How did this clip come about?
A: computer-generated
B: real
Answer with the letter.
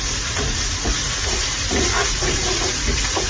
A